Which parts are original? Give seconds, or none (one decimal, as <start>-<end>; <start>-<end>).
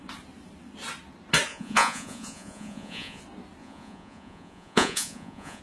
0.0-1.5; 3.2-3.6